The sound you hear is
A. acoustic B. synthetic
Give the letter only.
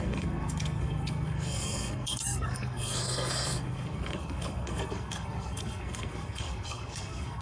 B